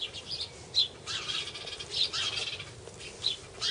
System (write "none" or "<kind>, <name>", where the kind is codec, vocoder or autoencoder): none